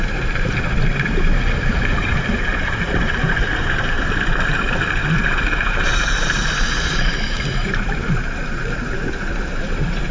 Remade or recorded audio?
remade